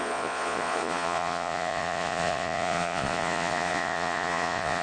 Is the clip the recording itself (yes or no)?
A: no